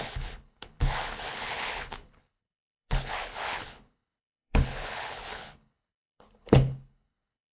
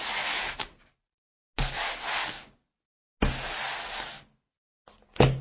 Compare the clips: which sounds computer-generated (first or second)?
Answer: first